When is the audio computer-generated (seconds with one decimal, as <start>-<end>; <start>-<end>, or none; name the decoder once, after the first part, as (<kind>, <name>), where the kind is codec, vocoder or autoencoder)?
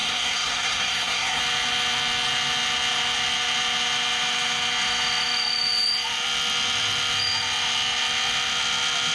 0.0-1.4 (codec, SNAC)